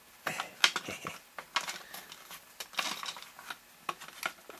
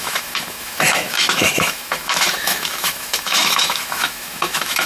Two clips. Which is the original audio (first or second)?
first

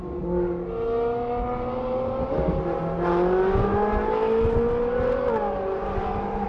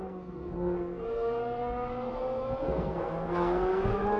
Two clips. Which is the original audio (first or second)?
first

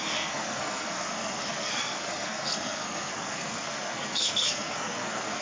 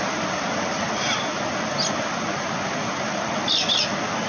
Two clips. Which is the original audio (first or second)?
second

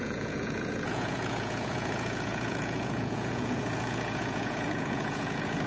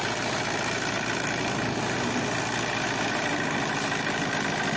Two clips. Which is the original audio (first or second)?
second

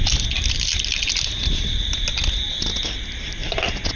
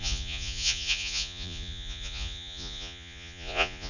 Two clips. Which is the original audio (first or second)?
first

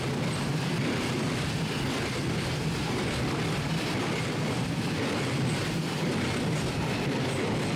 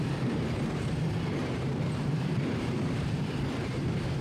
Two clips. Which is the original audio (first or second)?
first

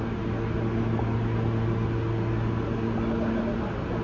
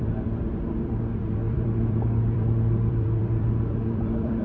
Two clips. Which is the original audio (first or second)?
first